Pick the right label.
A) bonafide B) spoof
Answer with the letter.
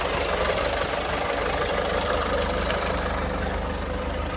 A